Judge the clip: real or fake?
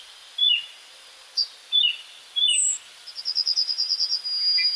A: real